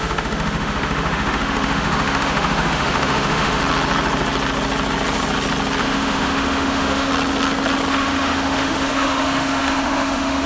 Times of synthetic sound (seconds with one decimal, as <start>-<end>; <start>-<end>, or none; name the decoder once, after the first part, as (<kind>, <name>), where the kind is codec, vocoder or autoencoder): 0.0-3.6 (autoencoder, DAC-VAE); 5.8-7.1; 7.9-10.5